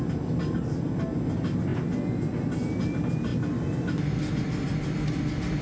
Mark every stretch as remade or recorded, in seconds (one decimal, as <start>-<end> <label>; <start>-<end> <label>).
0.0-5.6 recorded